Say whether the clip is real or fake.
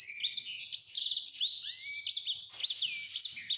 real